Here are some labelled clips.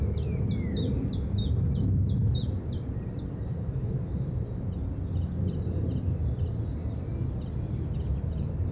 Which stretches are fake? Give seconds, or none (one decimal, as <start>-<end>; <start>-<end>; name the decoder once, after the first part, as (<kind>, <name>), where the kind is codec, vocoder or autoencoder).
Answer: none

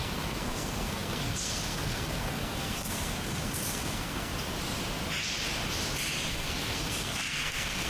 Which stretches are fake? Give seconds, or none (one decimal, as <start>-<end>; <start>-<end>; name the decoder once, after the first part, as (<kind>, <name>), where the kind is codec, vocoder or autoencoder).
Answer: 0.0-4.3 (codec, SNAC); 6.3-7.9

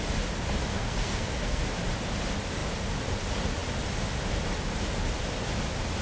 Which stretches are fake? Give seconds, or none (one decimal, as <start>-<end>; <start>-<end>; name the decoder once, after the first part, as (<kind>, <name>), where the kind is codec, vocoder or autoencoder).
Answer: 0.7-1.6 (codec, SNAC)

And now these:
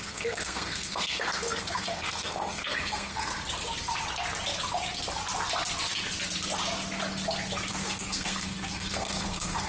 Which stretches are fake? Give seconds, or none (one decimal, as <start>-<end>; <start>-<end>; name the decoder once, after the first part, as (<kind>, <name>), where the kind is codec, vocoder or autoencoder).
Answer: 0.0-3.3 (codec, SNAC); 7.7-9.7